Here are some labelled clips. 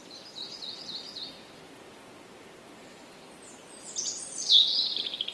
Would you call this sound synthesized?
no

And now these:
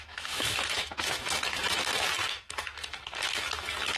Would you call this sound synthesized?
yes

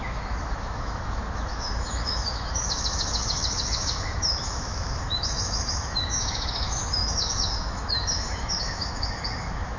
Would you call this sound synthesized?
yes